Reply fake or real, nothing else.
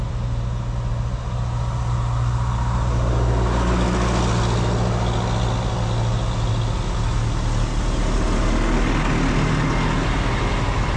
real